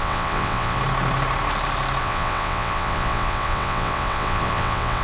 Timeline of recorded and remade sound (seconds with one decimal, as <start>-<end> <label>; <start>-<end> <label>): 0.0-0.8 remade; 0.8-2.0 recorded; 2.0-5.0 remade